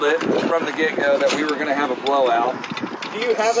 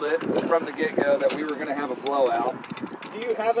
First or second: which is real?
first